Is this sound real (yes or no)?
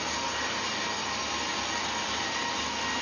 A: yes